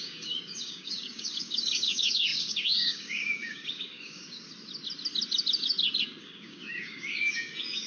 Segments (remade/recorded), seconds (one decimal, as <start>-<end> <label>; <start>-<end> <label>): 0.0-4.5 remade; 4.5-6.2 recorded; 6.2-7.9 remade

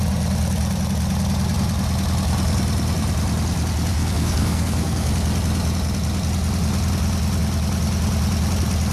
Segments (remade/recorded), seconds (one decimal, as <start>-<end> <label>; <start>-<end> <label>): 0.0-3.9 recorded; 3.9-5.1 remade; 5.1-8.9 recorded

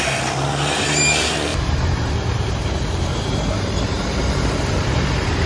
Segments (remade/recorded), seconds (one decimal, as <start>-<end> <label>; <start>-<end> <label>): 0.0-1.5 recorded; 1.5-4.8 remade; 4.8-5.5 recorded

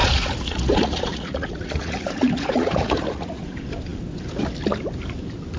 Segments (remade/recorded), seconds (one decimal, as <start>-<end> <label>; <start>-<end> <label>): 0.0-3.4 remade; 3.4-5.6 recorded